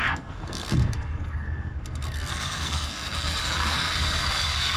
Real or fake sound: fake